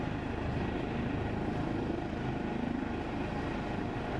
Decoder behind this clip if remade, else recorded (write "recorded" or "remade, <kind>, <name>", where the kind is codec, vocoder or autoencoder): recorded